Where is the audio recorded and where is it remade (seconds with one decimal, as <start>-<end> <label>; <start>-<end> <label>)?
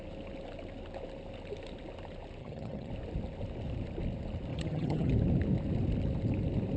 0.0-2.4 recorded; 2.4-2.9 remade; 2.9-4.5 recorded; 4.5-5.1 remade; 5.1-6.8 recorded